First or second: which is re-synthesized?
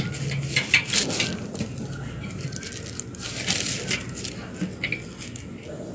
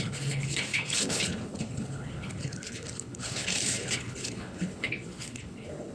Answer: second